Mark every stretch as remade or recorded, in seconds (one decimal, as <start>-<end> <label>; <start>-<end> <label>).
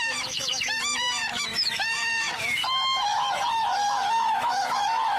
0.0-5.2 remade